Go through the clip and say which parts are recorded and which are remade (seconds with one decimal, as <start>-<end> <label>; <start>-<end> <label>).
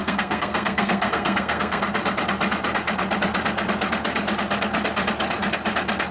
0.0-1.8 remade; 1.8-6.1 recorded